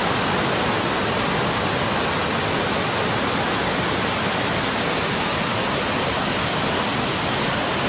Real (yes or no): yes